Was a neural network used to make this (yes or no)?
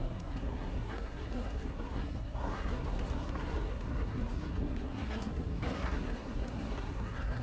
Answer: yes